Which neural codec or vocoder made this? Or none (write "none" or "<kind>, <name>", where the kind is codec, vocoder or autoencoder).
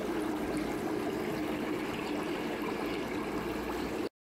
none